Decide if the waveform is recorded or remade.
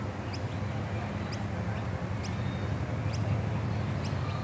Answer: recorded